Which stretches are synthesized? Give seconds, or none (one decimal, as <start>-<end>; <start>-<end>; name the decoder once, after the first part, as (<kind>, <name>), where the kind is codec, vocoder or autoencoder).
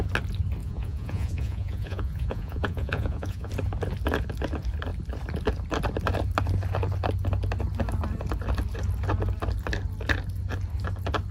0.6-3.5 (vocoder, Vocos)